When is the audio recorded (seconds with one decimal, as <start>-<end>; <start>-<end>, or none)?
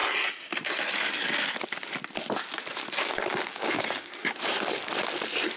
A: 0.0-3.5; 4.1-5.6